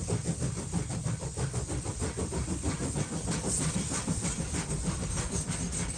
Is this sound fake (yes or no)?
no